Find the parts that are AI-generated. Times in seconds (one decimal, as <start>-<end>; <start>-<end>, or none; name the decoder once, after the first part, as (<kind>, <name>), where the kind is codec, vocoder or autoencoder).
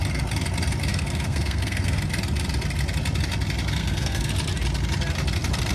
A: 0.9-2.0 (codec, SNAC); 3.8-4.3